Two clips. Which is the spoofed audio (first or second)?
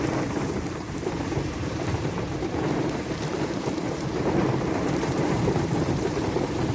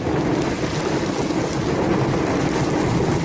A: first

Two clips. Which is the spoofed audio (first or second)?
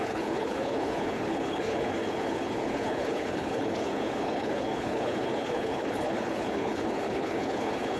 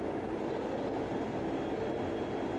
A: first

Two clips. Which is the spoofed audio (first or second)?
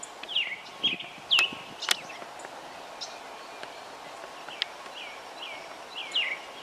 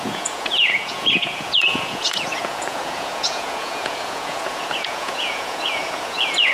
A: second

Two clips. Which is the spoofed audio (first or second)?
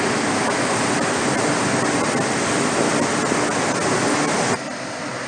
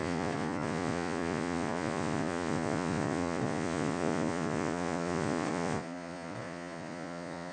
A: second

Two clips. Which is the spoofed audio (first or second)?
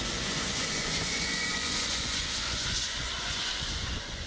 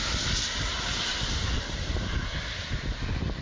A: first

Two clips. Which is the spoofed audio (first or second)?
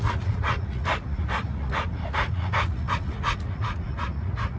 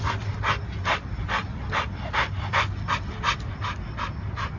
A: first